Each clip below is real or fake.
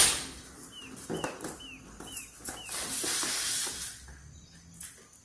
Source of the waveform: real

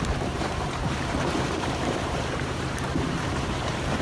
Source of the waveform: fake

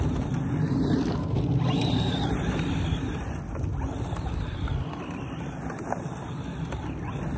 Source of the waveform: real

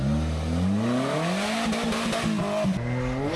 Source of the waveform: real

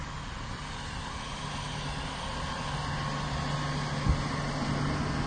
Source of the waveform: real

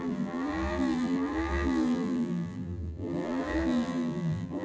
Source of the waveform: fake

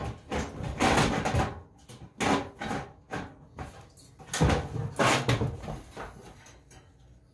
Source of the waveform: real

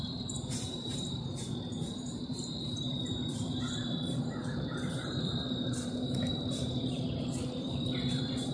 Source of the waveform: fake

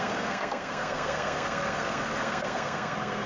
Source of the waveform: fake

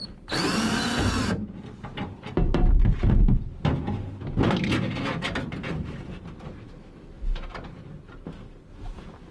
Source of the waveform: real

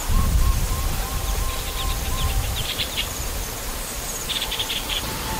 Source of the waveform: fake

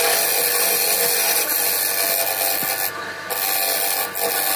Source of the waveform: real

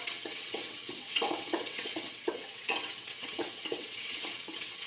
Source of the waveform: fake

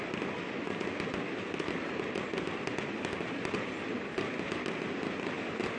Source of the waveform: real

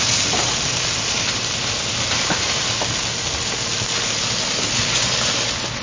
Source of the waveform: real